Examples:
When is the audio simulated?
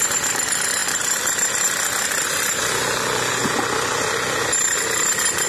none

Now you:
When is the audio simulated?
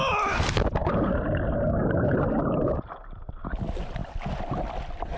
none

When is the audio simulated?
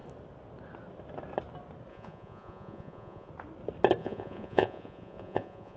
1.9-3.3 (vocoder, Vocos); 4.0-5.8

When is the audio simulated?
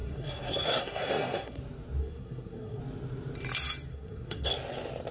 0.0-1.6 (codec, SNAC); 2.0-2.8; 3.9-4.5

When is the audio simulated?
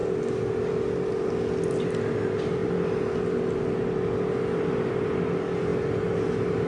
none